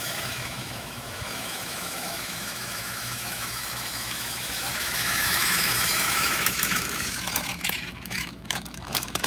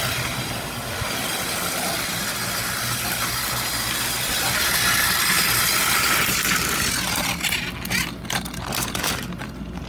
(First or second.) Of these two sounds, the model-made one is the first